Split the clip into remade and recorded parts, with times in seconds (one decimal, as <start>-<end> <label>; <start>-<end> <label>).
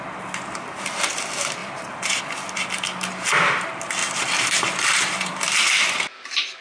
0.0-1.6 recorded; 1.6-2.2 remade; 2.2-6.6 recorded